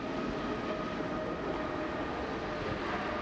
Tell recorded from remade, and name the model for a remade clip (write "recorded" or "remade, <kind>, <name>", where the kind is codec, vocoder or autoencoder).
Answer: recorded